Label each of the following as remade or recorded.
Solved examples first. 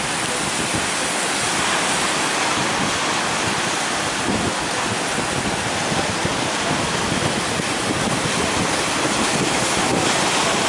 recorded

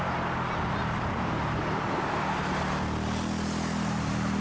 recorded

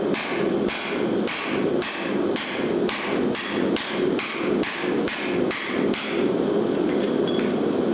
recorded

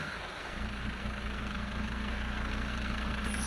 remade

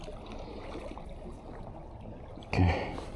recorded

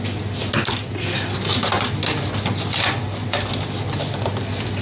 recorded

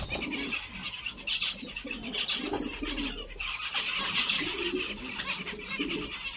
recorded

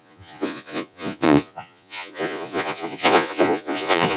remade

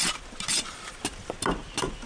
recorded